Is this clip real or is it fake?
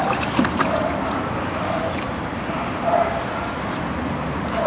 real